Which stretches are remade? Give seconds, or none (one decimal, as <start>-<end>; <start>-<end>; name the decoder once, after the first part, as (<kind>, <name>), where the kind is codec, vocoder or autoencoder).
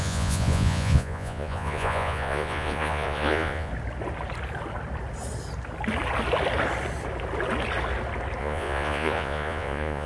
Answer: 0.0-3.7 (vocoder, Vocos); 8.4-10.1